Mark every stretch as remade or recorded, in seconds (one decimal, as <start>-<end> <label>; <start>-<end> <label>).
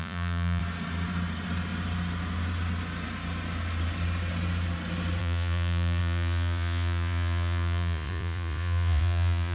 0.0-0.6 remade; 0.6-5.2 recorded; 5.2-9.5 remade